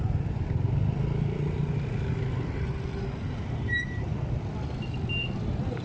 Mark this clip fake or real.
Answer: real